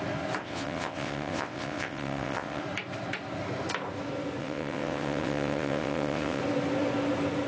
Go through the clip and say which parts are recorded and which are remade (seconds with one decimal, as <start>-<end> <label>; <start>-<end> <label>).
0.0-0.4 recorded; 0.4-2.6 remade; 2.6-4.4 recorded; 4.4-6.4 remade; 6.4-7.5 recorded